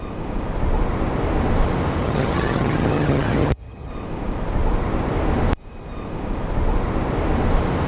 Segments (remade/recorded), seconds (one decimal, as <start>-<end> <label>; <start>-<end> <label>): 0.0-2.0 recorded; 2.0-3.9 remade; 3.9-7.9 recorded